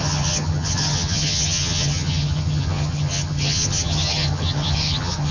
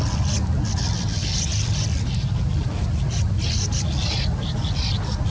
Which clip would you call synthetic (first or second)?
first